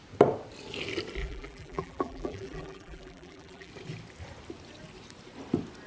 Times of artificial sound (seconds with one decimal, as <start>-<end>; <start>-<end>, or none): 1.2-3.7